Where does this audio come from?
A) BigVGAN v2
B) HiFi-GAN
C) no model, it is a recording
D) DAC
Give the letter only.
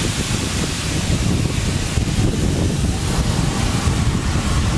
A